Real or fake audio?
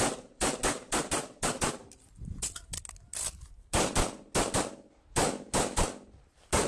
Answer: real